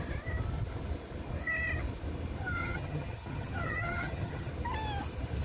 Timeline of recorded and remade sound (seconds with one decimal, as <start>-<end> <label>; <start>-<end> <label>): 0.0-2.6 recorded; 2.6-4.5 remade; 4.5-5.4 recorded